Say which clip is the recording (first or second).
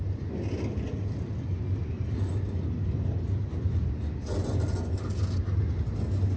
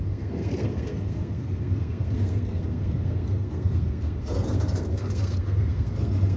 first